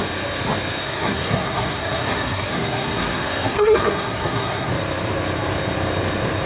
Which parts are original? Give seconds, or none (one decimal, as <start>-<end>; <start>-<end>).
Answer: 0.0-0.8; 4.7-6.5